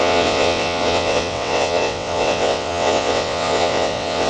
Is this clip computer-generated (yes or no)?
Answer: yes